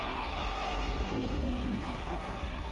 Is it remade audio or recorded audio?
remade